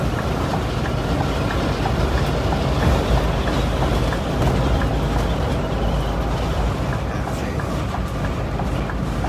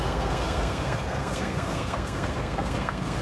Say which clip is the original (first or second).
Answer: first